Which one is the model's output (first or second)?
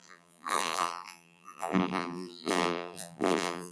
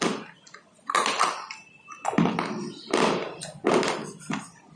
first